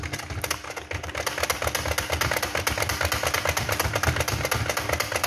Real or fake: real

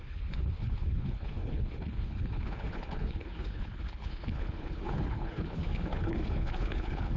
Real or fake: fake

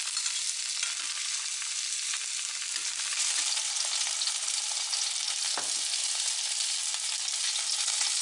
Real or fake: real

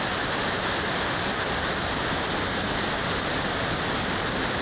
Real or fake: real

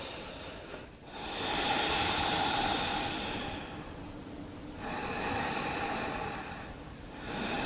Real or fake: fake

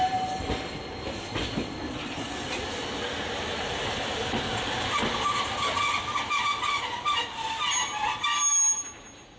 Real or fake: real